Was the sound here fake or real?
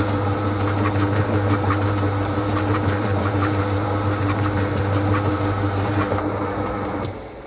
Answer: fake